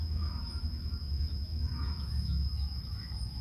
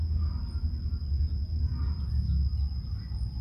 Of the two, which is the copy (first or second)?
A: first